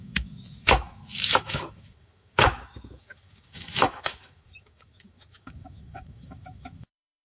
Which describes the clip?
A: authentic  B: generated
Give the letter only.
B